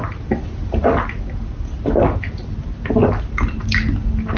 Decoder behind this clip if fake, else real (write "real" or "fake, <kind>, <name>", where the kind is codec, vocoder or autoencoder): real